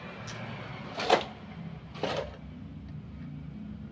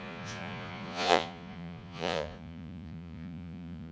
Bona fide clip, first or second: first